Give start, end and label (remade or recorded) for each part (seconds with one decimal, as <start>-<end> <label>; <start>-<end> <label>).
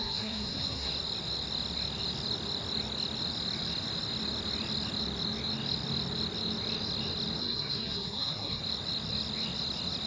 0.0-0.9 remade; 0.9-7.4 recorded; 7.4-8.6 remade; 8.6-10.1 recorded